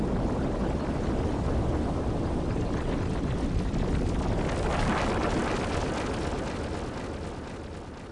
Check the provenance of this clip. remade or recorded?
recorded